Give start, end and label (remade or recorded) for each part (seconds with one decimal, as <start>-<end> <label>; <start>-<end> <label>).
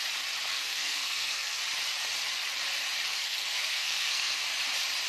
0.0-0.5 recorded; 0.5-1.6 remade; 1.6-3.1 recorded; 3.1-4.4 remade; 4.4-5.1 recorded